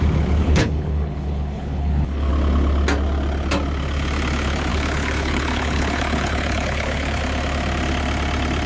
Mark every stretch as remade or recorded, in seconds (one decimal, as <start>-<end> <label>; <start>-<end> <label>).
0.0-0.4 recorded; 0.4-2.3 remade; 2.3-4.7 recorded; 4.7-7.2 remade; 7.2-8.7 recorded